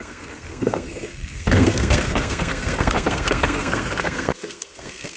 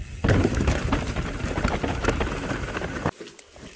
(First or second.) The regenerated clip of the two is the first